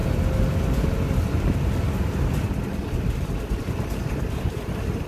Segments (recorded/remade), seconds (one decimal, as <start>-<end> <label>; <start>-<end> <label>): 0.0-5.1 recorded